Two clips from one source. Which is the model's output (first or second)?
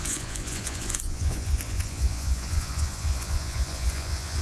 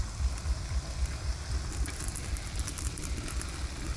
first